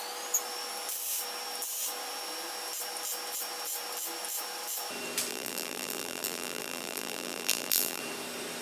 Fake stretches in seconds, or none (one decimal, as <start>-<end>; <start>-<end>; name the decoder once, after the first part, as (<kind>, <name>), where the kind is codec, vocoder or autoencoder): 5.3-8.0 (vocoder, BigVGAN v2)